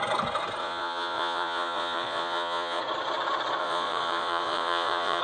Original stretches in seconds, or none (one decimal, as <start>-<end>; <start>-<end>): 0.0-0.6; 2.8-3.6